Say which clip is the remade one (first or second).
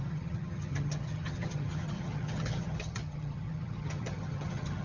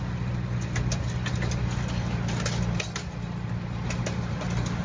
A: first